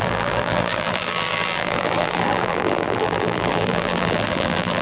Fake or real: fake